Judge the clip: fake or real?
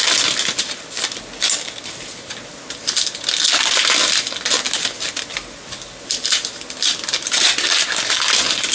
real